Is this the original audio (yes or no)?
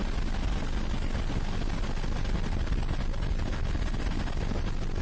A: yes